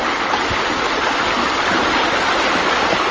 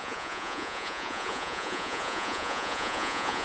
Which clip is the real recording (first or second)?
first